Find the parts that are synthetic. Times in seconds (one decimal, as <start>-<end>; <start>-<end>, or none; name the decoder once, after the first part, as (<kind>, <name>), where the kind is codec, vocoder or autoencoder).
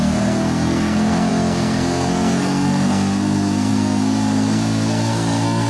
0.0-5.7 (codec, SNAC)